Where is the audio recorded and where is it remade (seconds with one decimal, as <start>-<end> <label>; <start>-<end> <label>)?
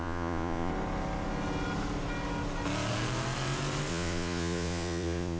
0.0-0.7 remade; 0.7-3.9 recorded; 3.9-5.4 remade